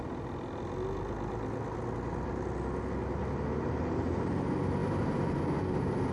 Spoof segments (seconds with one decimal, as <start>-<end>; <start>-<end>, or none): 4.8-5.4